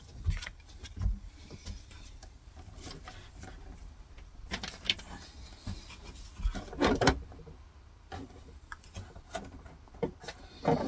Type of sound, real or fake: real